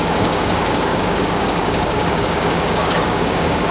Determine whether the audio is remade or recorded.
remade